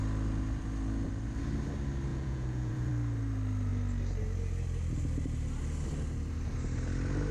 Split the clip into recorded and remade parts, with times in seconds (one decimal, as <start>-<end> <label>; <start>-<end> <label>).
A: 0.0-2.1 recorded; 2.1-2.9 remade; 2.9-7.3 recorded